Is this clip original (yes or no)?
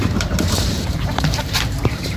no